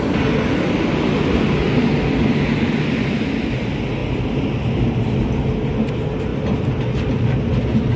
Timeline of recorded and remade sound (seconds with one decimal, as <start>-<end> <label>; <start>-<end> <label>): 0.0-8.0 recorded